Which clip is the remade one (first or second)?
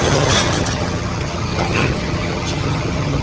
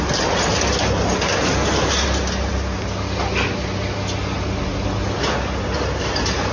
first